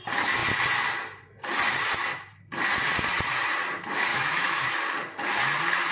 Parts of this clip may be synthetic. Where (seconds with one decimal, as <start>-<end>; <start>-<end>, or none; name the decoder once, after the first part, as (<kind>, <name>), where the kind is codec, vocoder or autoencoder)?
4.1-4.7 (autoencoder, DAC-VAE)